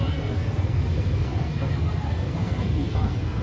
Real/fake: fake